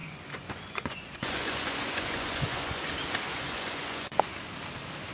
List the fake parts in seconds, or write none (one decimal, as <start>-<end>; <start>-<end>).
0.0-2.9; 3.3-4.3